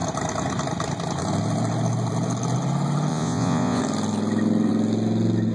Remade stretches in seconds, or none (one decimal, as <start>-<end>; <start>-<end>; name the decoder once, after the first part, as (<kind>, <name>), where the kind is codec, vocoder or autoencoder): 3.1-3.8 (vocoder, Vocos)